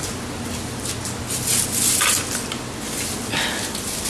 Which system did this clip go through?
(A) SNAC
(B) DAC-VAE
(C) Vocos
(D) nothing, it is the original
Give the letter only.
D